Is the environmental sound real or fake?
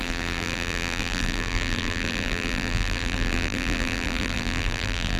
fake